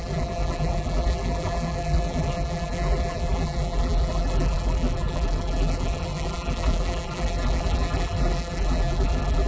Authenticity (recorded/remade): remade